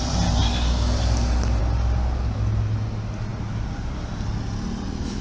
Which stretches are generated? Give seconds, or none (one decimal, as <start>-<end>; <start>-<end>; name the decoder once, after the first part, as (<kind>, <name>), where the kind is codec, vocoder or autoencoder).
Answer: none